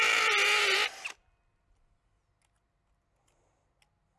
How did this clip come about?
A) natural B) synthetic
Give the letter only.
A